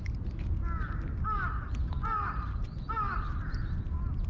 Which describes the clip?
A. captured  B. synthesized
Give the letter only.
A